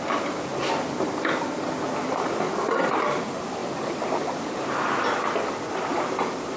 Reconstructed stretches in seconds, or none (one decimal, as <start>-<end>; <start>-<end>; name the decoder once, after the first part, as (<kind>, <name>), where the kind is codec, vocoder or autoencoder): none